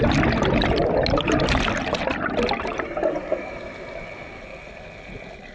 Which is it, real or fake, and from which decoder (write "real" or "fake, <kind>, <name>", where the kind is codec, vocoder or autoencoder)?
real